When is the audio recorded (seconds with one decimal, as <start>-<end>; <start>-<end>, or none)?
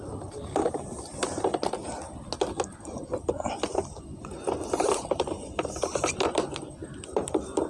0.0-7.7